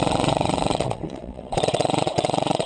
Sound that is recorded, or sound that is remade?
remade